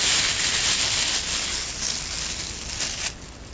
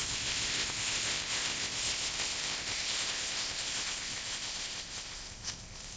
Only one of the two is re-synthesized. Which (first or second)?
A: second